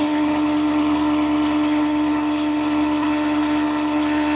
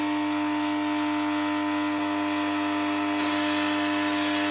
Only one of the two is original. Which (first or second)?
second